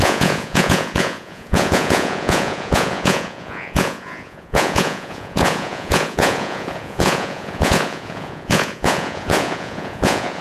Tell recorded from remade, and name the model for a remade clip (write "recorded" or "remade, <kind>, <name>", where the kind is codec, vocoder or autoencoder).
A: remade, vocoder, Vocos